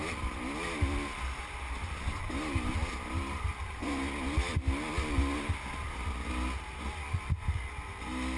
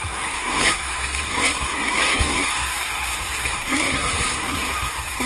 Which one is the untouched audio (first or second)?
first